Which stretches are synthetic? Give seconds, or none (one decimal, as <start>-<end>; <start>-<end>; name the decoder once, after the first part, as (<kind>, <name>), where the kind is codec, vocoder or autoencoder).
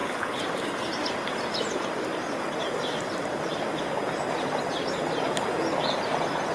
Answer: none